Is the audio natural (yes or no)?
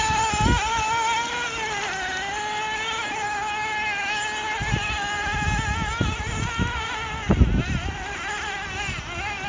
yes